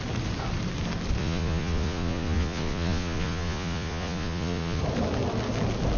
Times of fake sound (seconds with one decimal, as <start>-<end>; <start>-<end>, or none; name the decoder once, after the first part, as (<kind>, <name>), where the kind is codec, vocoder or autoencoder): 1.2-4.8 (vocoder, Vocos)